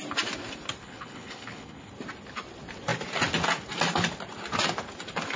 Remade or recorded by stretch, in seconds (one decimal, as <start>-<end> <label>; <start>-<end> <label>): 0.0-0.8 recorded; 0.8-1.9 remade; 1.9-5.4 recorded